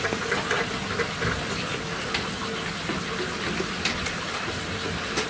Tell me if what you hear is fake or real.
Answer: real